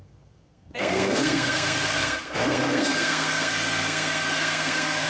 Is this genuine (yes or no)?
no